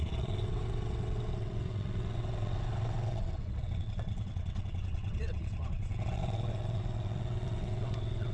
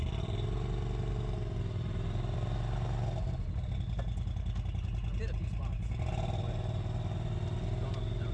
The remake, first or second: first